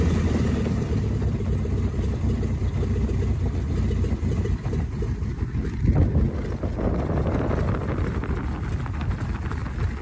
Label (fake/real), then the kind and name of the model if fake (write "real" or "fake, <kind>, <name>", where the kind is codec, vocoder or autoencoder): real